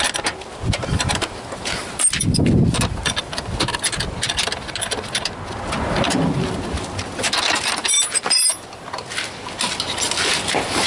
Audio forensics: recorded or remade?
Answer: recorded